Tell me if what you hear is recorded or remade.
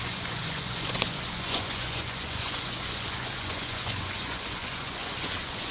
remade